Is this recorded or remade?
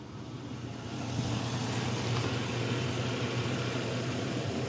recorded